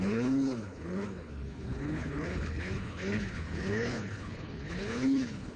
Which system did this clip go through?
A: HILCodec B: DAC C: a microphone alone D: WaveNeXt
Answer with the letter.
A